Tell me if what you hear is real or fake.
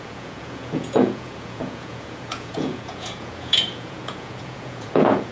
fake